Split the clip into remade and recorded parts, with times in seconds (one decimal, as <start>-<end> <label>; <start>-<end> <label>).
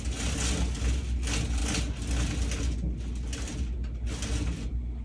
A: 0.0-5.0 recorded